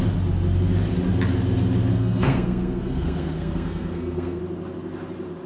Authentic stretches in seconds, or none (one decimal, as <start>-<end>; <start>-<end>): 0.0-1.9; 4.4-5.5